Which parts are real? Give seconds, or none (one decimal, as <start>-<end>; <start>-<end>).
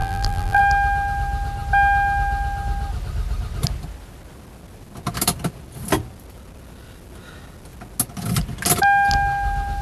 0.6-9.8